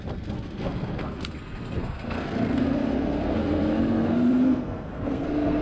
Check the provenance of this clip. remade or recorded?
remade